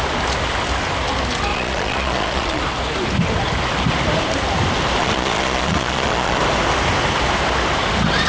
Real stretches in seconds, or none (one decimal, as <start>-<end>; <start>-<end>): 0.0-1.5; 2.6-5.0; 6.4-8.3